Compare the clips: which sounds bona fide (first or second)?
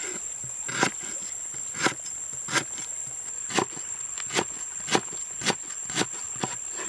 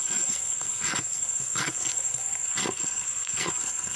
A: first